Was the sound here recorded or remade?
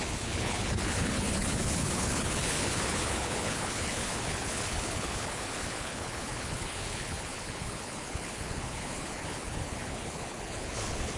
remade